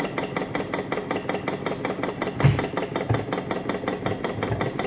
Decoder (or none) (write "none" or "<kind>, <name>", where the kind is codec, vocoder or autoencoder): none